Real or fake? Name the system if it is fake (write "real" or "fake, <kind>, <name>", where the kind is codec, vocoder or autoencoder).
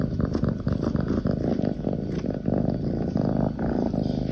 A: fake, vocoder, BigVGAN v2